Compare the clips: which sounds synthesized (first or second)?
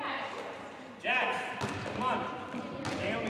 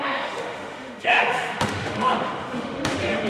second